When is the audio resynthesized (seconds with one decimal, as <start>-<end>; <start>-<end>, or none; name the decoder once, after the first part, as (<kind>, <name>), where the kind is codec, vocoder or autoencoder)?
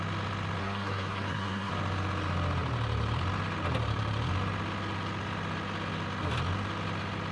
0.6-1.7 (codec, SNAC)